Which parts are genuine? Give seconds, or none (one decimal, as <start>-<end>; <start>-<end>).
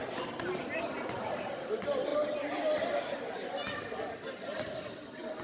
0.0-5.4